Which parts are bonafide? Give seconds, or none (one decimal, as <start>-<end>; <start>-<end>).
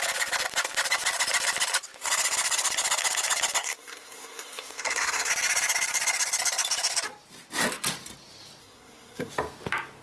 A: 0.0-3.6; 5.3-8.6; 9.3-10.0